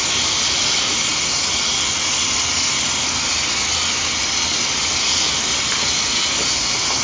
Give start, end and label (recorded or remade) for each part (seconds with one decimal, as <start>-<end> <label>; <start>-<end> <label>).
0.0-7.0 recorded